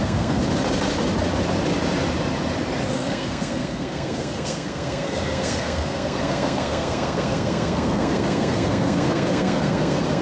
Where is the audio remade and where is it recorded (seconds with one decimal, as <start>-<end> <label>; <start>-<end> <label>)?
0.0-0.4 remade; 0.4-2.9 recorded; 2.9-10.2 remade